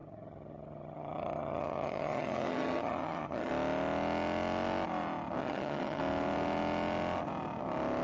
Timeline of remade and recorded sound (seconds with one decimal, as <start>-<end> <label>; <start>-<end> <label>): 0.0-3.5 remade; 3.5-5.4 recorded; 5.4-6.0 remade; 6.0-8.0 recorded